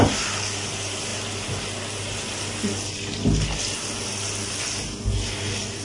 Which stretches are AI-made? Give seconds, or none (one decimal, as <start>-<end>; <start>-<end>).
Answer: none